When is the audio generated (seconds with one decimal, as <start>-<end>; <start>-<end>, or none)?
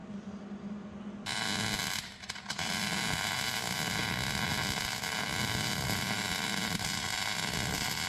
none